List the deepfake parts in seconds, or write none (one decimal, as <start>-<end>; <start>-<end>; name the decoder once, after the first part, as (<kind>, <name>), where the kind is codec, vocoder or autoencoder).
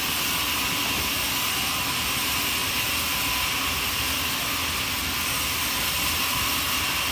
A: none